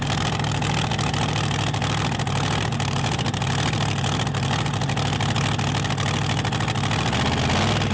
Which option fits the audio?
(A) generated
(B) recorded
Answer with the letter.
B